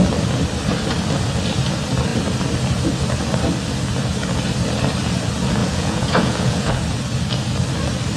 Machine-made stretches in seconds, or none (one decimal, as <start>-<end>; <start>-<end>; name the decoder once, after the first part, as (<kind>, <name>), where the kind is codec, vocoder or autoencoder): 5.6-6.7 (vocoder, Vocos)